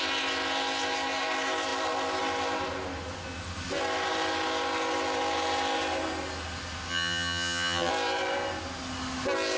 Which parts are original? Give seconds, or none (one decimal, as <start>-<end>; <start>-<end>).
0.0-6.9; 7.9-9.6